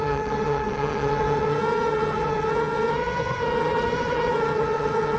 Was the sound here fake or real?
fake